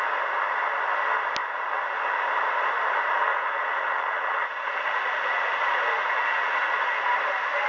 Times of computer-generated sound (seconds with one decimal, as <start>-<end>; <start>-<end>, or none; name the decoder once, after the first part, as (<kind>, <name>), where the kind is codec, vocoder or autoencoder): 3.3-7.0 (vocoder, Vocos)